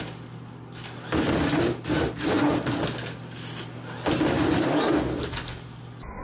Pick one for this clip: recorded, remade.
recorded